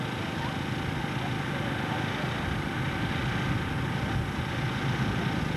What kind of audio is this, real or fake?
real